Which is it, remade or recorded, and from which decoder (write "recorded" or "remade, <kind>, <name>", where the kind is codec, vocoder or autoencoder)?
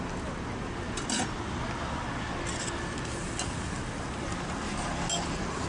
recorded